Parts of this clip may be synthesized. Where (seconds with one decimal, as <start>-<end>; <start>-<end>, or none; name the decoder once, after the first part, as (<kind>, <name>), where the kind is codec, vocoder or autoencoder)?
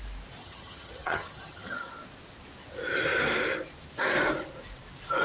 0.4-1.9 (vocoder, HiFi-GAN)